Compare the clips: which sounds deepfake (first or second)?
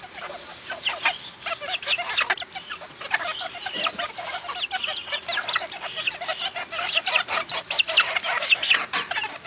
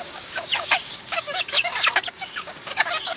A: second